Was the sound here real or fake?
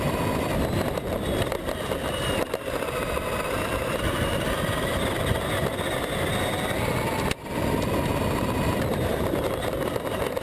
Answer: real